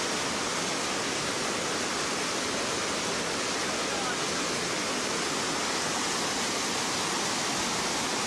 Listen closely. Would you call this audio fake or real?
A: real